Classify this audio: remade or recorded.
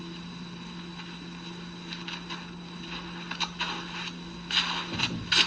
recorded